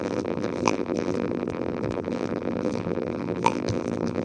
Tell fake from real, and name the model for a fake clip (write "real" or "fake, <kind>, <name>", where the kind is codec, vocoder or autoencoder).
fake, vocoder, BigVGAN v2